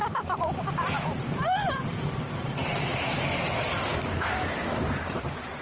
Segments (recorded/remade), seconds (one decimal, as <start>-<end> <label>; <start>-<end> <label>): 0.0-2.6 remade; 2.6-3.3 recorded; 3.3-5.6 remade